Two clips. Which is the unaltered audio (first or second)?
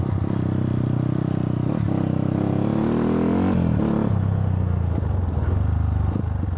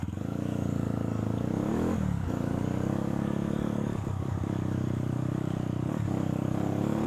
first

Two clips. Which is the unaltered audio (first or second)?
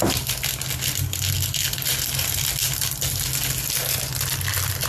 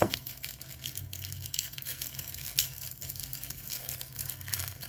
first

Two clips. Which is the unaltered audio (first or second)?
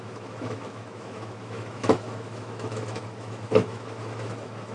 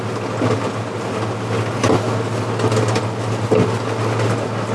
second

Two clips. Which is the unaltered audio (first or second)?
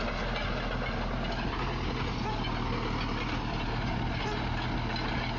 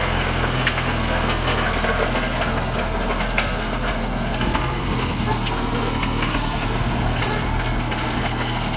first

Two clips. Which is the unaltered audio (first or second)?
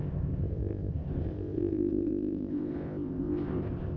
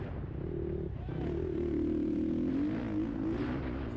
second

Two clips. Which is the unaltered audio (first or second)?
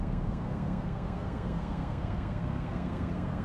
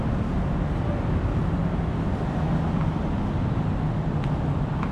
second